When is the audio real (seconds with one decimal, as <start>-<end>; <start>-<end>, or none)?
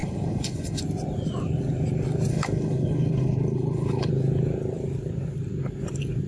0.8-2.3; 4.1-6.3